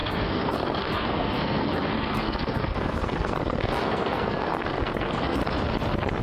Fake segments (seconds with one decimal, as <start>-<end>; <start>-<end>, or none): 0.0-5.4

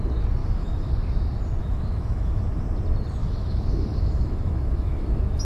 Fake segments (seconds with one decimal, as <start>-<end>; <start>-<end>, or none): 0.4-0.9; 1.6-2.4; 3.2-5.4

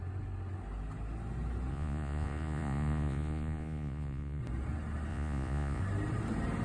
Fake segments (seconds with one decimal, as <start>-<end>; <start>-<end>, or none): 1.7-4.4; 5.1-5.8

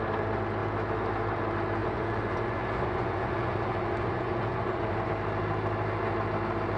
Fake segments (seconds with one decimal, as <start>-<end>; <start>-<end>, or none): 1.8-5.1

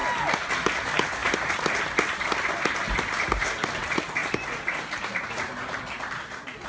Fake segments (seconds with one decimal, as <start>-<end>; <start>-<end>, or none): none

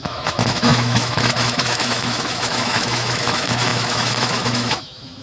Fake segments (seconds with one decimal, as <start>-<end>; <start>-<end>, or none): 0.0-5.2

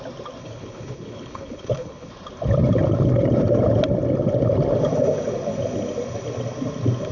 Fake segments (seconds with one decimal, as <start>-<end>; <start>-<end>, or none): 0.4-2.1